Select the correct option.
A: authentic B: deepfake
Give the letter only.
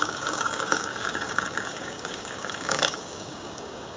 B